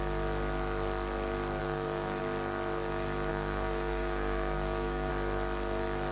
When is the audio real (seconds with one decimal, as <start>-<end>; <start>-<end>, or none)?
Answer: 0.0-1.6; 2.2-3.3; 5.1-6.1